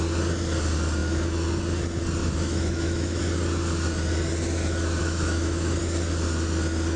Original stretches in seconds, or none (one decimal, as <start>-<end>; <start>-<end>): 0.0-2.2; 3.2-5.0; 5.8-7.0